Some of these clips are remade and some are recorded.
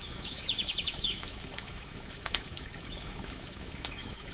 remade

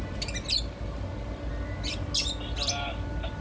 recorded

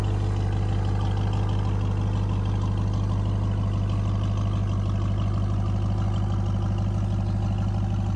recorded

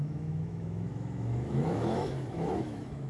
remade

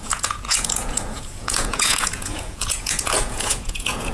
remade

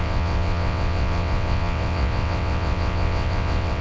remade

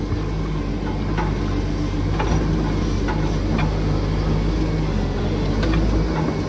recorded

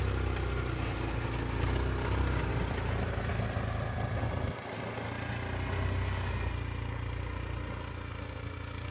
recorded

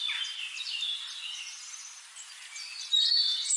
recorded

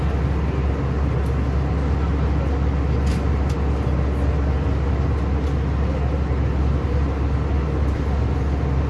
recorded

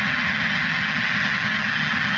remade